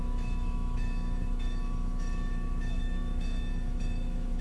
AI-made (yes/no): yes